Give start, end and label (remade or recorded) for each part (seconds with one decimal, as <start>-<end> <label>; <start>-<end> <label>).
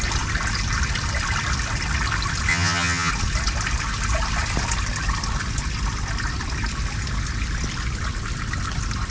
0.0-2.5 recorded; 2.5-3.1 remade; 3.1-9.1 recorded